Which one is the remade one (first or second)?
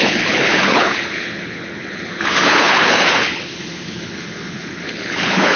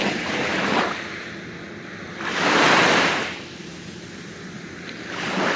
first